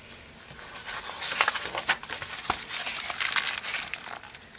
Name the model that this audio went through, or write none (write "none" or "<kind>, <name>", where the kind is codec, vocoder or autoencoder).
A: none